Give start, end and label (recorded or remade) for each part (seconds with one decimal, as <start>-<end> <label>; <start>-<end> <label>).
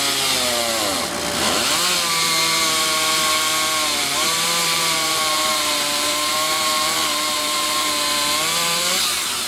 0.0-4.0 recorded; 4.0-7.9 remade; 7.9-9.5 recorded